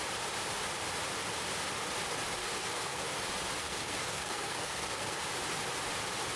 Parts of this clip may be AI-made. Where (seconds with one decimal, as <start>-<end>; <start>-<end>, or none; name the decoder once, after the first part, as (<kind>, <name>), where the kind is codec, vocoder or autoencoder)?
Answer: 2.4-3.2 (codec, SNAC); 3.6-5.2